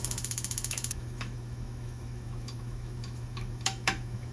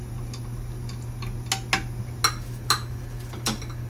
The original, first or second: second